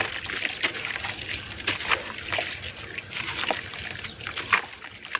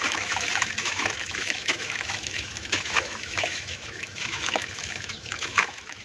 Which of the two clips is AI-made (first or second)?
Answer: second